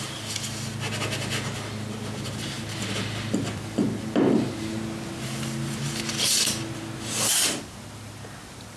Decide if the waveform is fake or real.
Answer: real